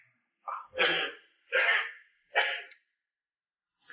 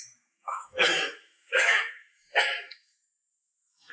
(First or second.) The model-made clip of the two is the second